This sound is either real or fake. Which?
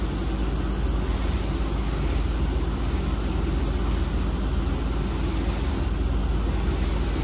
real